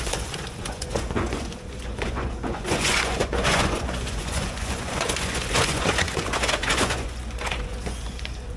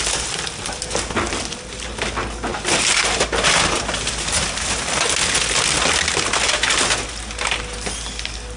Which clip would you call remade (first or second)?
first